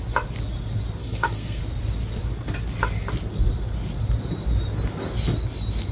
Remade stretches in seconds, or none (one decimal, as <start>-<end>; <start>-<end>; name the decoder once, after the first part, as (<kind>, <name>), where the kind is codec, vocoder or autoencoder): 1.0-1.6 (codec, SNAC)